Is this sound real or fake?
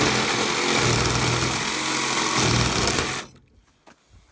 real